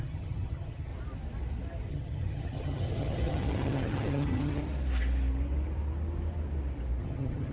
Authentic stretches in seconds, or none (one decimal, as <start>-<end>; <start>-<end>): 0.9-1.9; 4.6-7.0